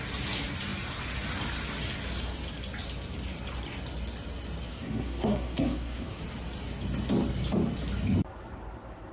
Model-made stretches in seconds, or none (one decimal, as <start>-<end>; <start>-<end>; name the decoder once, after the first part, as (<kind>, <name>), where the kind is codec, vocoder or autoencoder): 4.7-6.2 (codec, SNAC)